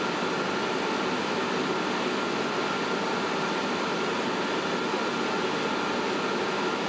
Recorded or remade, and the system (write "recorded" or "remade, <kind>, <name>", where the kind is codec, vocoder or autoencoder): recorded